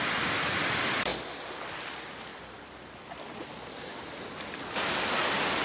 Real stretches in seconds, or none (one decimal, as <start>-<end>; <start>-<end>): 0.0-5.6